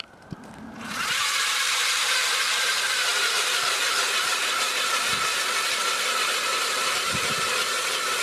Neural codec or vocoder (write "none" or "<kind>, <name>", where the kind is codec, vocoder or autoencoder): vocoder, BigVGAN v2